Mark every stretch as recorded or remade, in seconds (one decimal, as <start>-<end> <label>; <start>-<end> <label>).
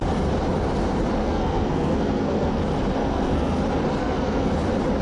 0.0-1.2 recorded; 1.2-2.6 remade; 2.6-3.0 recorded; 3.0-3.6 remade; 3.6-4.0 recorded; 4.0-4.5 remade; 4.5-5.0 recorded